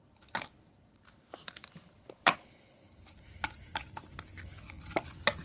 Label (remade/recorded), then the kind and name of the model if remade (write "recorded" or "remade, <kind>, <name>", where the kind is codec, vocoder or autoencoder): recorded